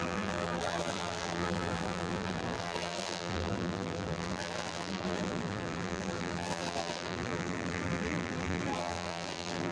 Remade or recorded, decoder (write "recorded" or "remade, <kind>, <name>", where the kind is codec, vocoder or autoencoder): remade, vocoder, BigVGAN v2